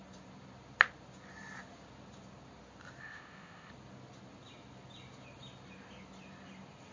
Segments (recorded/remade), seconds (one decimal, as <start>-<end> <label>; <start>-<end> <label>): 0.0-3.0 recorded; 3.0-3.7 remade; 3.7-6.9 recorded